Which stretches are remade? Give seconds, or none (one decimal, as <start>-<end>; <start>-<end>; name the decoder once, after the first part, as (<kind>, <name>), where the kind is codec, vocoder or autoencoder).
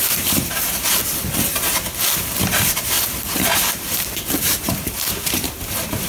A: 0.0-1.0 (vocoder, BigVGAN v2); 2.6-6.1